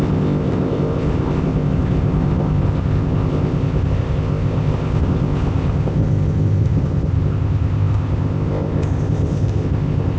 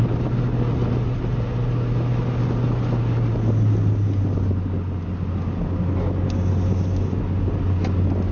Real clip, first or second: second